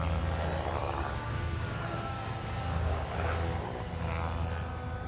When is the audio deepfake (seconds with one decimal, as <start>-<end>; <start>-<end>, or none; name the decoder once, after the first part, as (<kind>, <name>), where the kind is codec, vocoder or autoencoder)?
0.8-3.9 (codec, DAC)